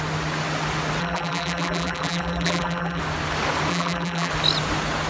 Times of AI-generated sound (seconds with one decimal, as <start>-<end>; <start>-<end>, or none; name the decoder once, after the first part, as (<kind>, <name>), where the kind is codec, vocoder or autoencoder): 1.0-3.0 (vocoder, BigVGAN v2); 3.7-4.3

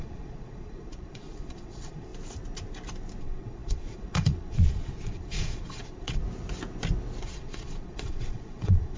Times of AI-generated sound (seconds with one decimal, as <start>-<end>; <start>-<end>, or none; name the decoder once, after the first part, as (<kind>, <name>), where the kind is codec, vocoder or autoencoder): 0.0-2.1 (vocoder, Vocos); 3.2-6.2; 7.2-9.0

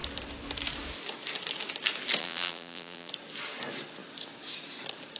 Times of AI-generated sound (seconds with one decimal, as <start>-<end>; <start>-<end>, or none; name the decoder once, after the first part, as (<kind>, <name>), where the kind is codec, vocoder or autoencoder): 2.2-3.1 (vocoder, BigVGAN v2)

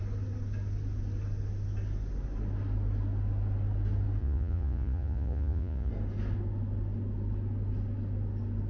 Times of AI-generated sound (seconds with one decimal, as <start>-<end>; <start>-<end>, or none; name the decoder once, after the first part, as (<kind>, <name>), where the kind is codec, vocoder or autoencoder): 4.2-5.9 (vocoder, Vocos)

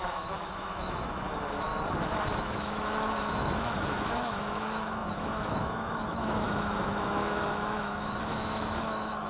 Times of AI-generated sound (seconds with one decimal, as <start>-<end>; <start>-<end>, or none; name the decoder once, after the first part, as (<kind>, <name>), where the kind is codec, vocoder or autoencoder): 0.0-1.7 (autoencoder, DAC-VAE); 2.4-9.3

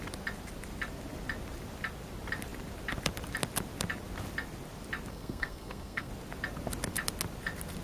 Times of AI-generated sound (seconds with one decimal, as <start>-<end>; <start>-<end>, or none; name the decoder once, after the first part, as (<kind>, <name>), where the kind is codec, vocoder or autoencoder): 5.1-6.1 (codec, SNAC)